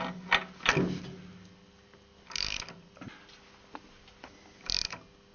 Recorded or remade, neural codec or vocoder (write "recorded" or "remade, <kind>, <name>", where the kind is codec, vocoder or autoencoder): recorded